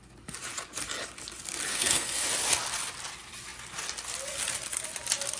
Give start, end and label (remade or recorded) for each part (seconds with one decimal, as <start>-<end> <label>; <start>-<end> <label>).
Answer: 0.0-1.7 recorded; 1.7-2.2 remade; 2.2-5.4 recorded